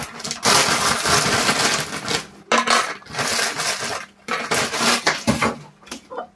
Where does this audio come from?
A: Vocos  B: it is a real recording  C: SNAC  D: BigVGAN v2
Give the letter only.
B